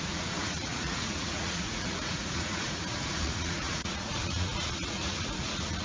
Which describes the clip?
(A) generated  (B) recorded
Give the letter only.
A